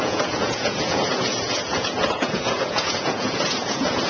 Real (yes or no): no